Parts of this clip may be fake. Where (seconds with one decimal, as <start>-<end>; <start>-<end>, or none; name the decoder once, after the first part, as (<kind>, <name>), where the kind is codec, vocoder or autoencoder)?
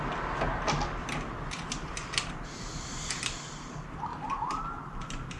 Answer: none